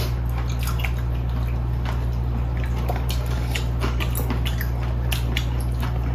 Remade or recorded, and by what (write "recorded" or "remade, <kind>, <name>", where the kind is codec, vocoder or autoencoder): recorded